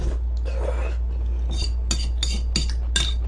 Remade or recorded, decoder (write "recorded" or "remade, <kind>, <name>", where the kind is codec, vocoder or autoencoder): recorded